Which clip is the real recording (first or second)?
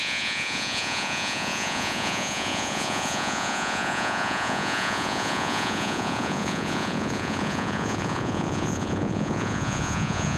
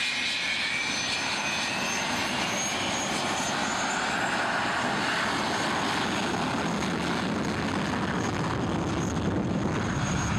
second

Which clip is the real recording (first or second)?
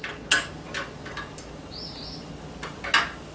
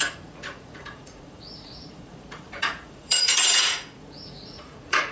first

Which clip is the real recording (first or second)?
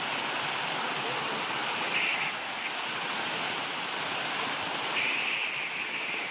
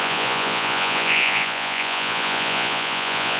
first